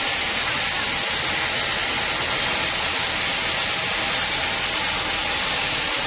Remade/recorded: recorded